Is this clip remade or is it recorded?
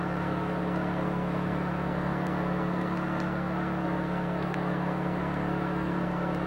remade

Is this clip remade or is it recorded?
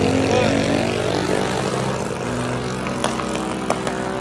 recorded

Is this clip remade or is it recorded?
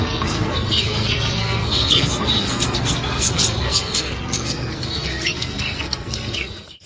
remade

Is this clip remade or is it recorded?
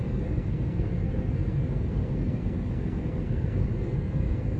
remade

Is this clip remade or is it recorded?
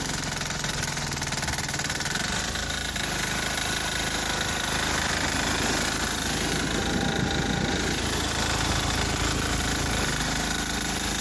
recorded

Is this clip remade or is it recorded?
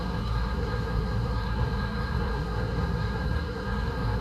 remade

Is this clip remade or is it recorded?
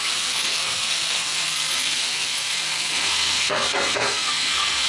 remade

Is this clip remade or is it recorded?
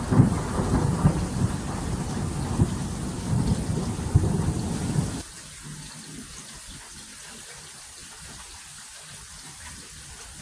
recorded